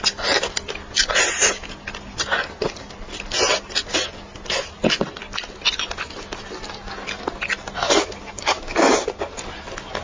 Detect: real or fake real